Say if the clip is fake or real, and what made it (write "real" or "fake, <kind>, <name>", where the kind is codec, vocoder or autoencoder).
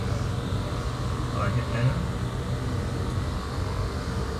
real